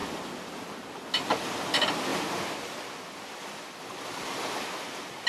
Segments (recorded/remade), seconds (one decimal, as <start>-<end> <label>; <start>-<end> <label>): 0.0-5.3 recorded